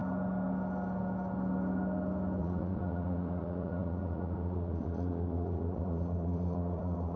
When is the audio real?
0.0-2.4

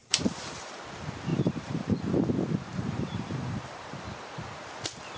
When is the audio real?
0.8-1.3; 2.0-2.7; 3.9-5.2

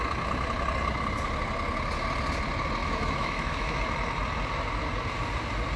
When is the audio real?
0.0-2.8; 3.8-5.8

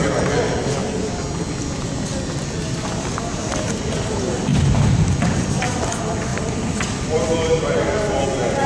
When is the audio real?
0.0-4.5; 5.2-6.3; 8.2-8.7

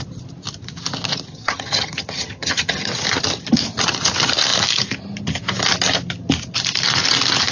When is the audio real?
0.0-1.3; 2.9-7.5

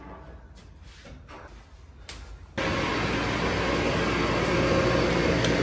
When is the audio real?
0.0-5.6

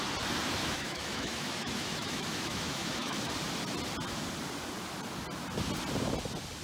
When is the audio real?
0.0-0.6; 3.3-6.6